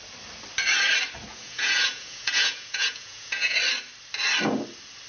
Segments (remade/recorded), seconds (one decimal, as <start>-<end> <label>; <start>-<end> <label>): 0.0-1.3 recorded; 1.3-3.6 remade; 3.6-5.1 recorded

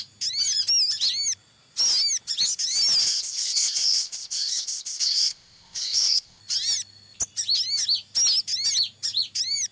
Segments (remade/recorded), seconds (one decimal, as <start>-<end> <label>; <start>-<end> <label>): 0.0-3.0 recorded; 3.0-6.4 remade; 6.4-9.7 recorded

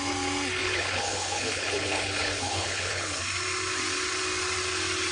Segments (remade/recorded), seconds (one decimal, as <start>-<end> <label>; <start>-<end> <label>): 0.0-0.6 recorded; 0.6-3.2 remade; 3.2-5.1 recorded

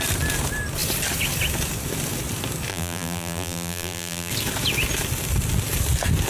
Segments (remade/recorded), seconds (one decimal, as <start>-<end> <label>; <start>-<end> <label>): 0.0-2.7 recorded; 2.7-4.3 remade; 4.3-6.3 recorded